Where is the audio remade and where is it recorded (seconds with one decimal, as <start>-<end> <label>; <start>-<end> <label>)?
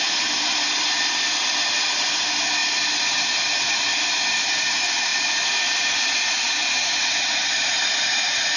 0.0-8.6 recorded